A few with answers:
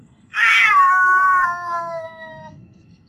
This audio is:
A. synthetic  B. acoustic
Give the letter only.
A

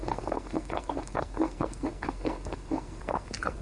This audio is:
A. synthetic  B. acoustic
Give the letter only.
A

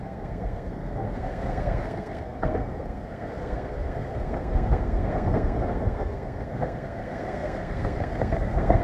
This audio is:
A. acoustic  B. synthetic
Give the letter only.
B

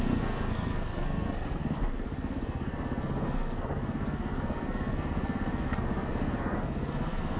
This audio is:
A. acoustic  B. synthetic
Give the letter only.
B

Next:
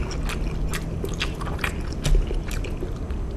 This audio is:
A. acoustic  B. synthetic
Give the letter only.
A